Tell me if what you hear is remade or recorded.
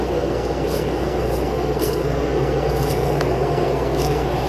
remade